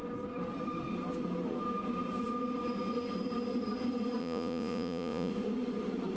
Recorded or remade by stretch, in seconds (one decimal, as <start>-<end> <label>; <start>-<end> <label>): 0.0-4.2 recorded; 4.2-5.3 remade; 5.3-6.2 recorded